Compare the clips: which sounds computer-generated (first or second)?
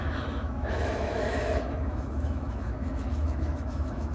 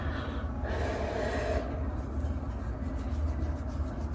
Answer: first